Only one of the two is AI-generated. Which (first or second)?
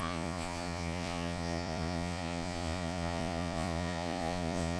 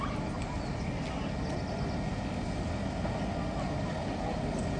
first